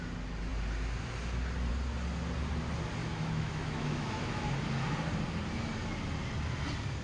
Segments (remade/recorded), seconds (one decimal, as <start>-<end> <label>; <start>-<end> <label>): 0.0-3.0 recorded; 3.0-4.5 remade; 4.5-7.0 recorded